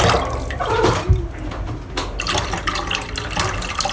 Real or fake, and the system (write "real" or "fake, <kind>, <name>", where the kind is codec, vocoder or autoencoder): real